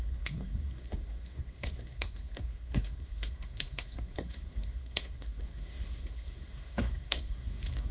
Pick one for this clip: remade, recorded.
remade